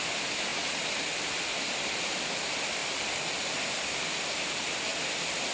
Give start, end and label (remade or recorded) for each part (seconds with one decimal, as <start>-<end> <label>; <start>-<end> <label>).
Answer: 0.0-5.5 recorded